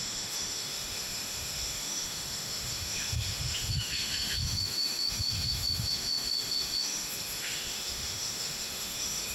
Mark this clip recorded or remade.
remade